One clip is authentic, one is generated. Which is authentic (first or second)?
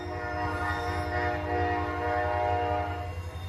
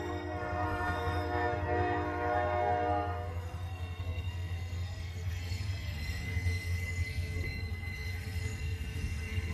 first